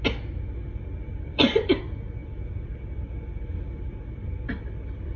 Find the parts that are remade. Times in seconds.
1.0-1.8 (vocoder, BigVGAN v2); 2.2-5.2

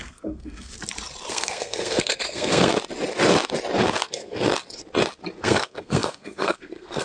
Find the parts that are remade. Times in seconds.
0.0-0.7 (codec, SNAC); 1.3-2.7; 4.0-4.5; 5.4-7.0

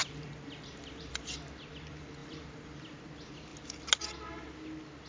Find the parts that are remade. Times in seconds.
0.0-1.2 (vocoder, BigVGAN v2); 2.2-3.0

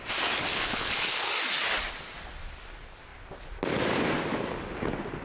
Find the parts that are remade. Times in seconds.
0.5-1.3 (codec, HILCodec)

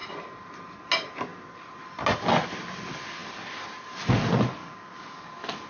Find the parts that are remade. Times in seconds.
4.6-5.3 (codec, DAC)

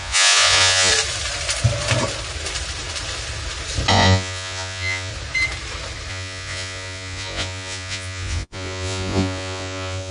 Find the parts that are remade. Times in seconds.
0.0-0.9 (vocoder, Vocos); 3.9-5.1; 6.1-10.1

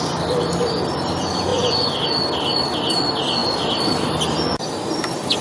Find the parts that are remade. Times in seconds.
1.5-2.0 (vocoder, Vocos)

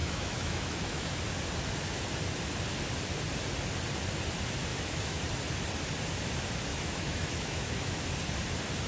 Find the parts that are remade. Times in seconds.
0.0-1.2 (autoencoder, DAC-VAE); 4.7-5.2; 6.7-8.0